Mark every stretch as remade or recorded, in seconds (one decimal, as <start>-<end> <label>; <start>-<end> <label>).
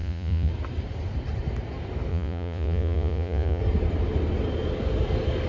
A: 0.0-0.5 remade; 0.5-2.1 recorded; 2.1-3.6 remade; 3.6-5.5 recorded